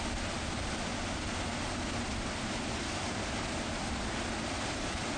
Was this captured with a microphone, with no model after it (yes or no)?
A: yes